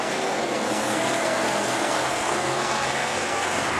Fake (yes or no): yes